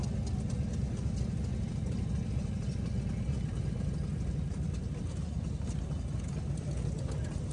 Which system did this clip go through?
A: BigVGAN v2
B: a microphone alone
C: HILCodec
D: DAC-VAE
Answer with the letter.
B